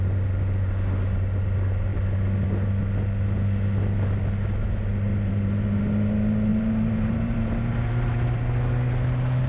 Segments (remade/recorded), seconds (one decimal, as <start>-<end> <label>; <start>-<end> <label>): 0.0-5.1 recorded; 5.1-5.8 remade; 5.8-6.5 recorded; 6.5-8.4 remade; 8.4-9.5 recorded